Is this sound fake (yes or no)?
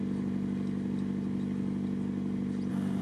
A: no